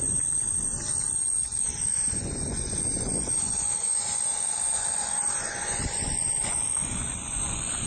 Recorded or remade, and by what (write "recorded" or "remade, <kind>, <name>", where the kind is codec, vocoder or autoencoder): remade, vocoder, Vocos